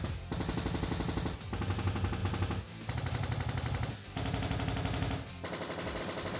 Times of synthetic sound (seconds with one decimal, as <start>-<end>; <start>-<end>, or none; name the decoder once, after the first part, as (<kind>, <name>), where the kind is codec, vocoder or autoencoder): none